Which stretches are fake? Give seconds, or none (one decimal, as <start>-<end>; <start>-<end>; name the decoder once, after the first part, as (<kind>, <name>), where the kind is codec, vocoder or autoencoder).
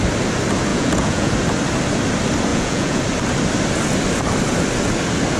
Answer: 0.7-1.3 (vocoder, Vocos); 2.5-3.0